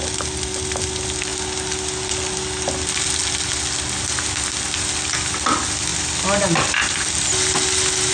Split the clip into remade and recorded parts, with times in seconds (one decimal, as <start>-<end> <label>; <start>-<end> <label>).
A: 0.0-8.1 recorded